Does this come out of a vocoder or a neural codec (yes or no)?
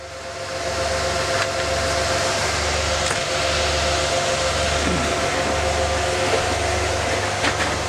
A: no